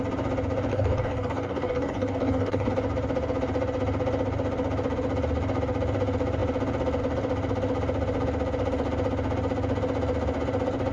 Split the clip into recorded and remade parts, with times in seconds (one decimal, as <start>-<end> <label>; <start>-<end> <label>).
0.0-0.7 recorded; 0.7-2.7 remade; 2.7-10.9 recorded